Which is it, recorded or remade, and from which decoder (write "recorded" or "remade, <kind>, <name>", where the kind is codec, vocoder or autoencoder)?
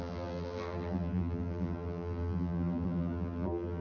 remade, vocoder, BigVGAN v2